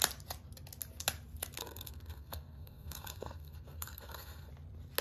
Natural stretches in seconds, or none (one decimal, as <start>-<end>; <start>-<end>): 0.0-1.6; 4.5-5.0